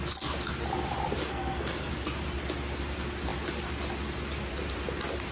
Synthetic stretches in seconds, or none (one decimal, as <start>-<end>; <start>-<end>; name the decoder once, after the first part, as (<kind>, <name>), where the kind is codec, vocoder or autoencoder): 1.3-1.9 (codec, SNAC)